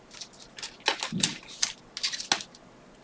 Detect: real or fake real